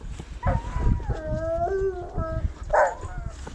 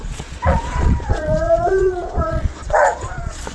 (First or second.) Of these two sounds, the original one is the first